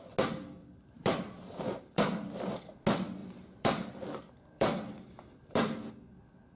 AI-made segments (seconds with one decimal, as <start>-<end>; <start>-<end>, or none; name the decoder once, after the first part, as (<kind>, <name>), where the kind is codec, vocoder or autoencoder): 0.6-2.8 (vocoder, BigVGAN v2); 3.2-5.9